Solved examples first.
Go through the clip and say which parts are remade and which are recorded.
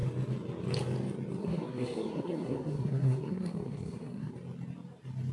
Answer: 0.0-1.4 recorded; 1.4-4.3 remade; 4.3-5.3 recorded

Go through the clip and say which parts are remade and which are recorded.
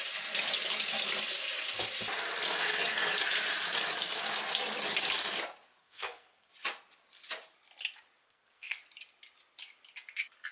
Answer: 0.0-5.8 recorded; 5.8-6.5 remade; 6.5-8.2 recorded; 8.2-8.8 remade; 8.8-10.5 recorded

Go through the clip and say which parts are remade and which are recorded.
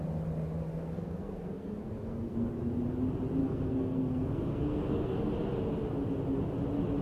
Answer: 0.0-0.7 recorded; 0.7-2.5 remade; 2.5-3.4 recorded; 3.4-5.2 remade; 5.2-7.0 recorded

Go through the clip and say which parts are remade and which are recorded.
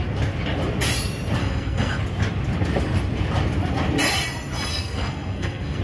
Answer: 0.0-1.4 recorded; 1.4-2.0 remade; 2.0-4.7 recorded; 4.7-5.8 remade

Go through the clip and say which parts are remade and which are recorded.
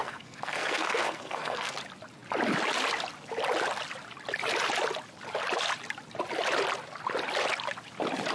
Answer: 0.0-1.8 remade; 1.8-8.3 recorded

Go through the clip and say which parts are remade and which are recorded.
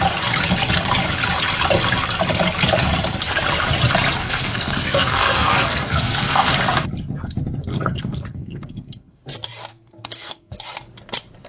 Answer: 0.0-4.2 recorded; 4.2-6.5 remade; 6.5-7.7 recorded; 7.7-9.2 remade; 9.2-9.7 recorded; 9.7-10.6 remade; 10.6-11.5 recorded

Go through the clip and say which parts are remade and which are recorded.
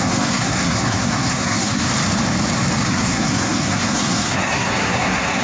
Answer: 0.0-1.9 remade; 1.9-2.9 recorded; 2.9-5.4 remade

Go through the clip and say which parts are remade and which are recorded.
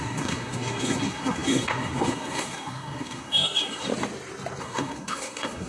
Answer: 0.0-3.9 remade; 3.9-4.6 recorded; 4.6-5.7 remade